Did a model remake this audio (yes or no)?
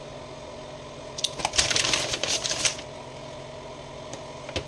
no